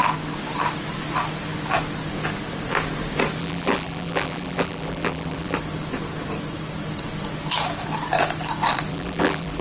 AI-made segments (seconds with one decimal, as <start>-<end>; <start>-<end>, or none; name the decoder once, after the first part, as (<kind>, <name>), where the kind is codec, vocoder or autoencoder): 3.4-5.6 (vocoder, BigVGAN v2); 8.9-9.6